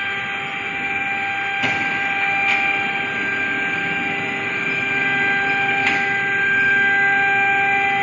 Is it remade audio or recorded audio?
recorded